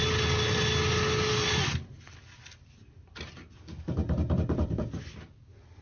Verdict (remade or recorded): recorded